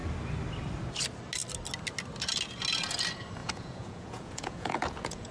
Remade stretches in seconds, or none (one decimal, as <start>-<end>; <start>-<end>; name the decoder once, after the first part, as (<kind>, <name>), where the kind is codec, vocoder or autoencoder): 3.4-5.3 (vocoder, Vocos)